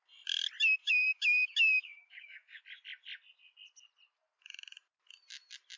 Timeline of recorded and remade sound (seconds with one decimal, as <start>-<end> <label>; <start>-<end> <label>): 0.0-0.8 recorded; 0.8-2.6 remade; 2.6-5.8 recorded